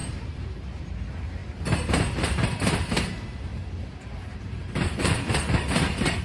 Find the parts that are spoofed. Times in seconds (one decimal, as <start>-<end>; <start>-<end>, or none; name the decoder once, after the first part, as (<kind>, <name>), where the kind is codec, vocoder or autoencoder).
0.0-1.4 (vocoder, BigVGAN v2); 1.9-6.2